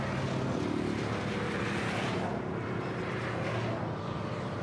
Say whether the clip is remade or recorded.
recorded